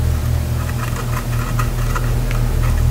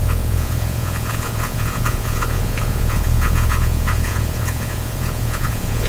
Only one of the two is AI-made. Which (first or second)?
second